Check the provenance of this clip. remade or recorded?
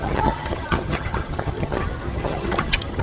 remade